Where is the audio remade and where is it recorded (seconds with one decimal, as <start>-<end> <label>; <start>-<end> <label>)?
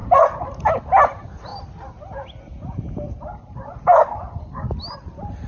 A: 0.0-5.5 recorded